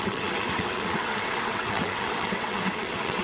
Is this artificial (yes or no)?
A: yes